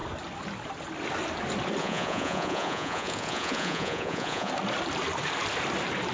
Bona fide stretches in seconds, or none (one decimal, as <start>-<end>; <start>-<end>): 0.0-1.8; 4.5-6.1